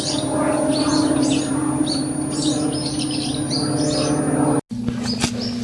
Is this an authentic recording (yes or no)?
yes